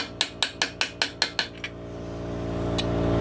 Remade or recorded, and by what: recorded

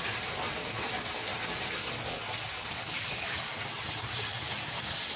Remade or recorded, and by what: recorded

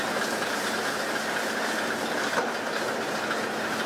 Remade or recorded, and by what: recorded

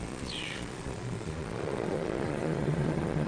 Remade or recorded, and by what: remade, vocoder, Vocos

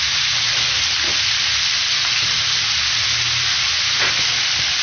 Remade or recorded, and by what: recorded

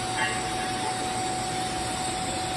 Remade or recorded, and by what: recorded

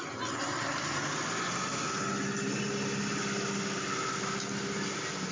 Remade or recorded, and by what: recorded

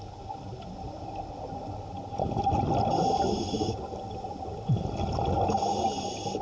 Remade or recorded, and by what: recorded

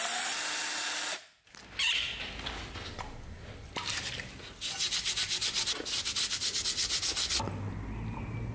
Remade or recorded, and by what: recorded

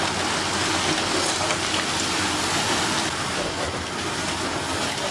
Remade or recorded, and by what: recorded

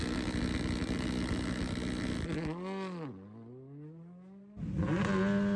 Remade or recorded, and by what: recorded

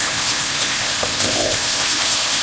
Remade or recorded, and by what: remade, codec, ZipCodec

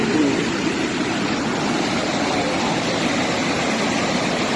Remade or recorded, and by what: recorded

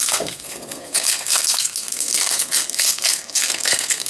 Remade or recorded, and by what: remade, codec, SNAC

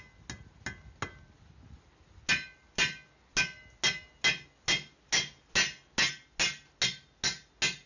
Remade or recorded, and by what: recorded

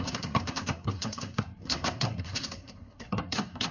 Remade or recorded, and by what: remade, codec, SNAC